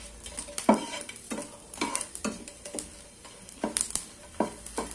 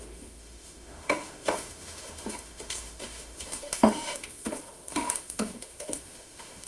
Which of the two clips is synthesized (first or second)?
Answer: second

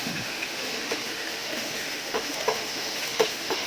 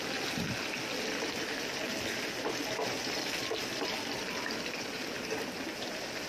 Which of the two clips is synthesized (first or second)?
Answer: first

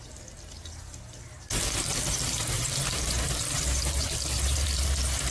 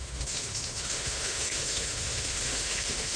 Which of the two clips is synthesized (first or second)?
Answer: second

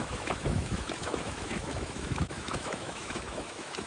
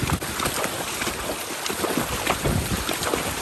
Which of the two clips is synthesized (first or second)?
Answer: first